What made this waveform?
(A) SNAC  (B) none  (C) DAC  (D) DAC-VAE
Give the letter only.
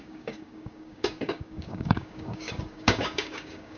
C